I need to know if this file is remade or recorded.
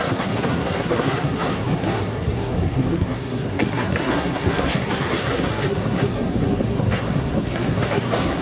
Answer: remade